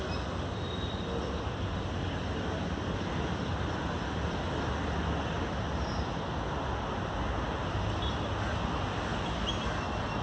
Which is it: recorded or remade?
recorded